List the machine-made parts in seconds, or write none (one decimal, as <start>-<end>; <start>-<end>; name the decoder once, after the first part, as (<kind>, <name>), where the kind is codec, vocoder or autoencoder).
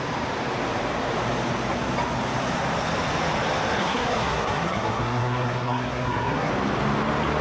3.8-6.5 (codec, SNAC)